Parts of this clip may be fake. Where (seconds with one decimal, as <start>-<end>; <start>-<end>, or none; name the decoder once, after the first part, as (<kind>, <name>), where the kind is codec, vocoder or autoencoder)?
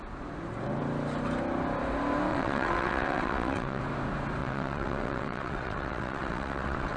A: 2.3-3.8 (vocoder, WaveNeXt); 4.4-7.0